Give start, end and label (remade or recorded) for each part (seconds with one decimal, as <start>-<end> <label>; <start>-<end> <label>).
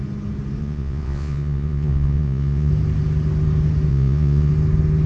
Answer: 0.0-0.6 recorded; 0.6-2.7 remade; 2.7-3.9 recorded; 3.9-4.5 remade; 4.5-5.1 recorded